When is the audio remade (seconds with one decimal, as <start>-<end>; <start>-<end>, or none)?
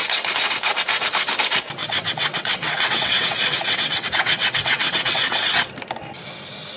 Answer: 1.8-5.7